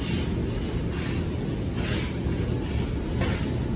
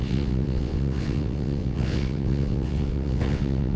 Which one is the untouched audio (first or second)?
first